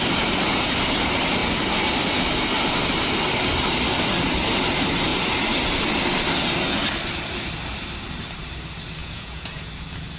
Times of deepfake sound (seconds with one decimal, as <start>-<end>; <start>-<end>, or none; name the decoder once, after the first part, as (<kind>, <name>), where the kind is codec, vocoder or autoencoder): 9.0-9.7 (vocoder, Vocos)